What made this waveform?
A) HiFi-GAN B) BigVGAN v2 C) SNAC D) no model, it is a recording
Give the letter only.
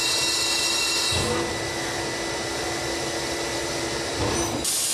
D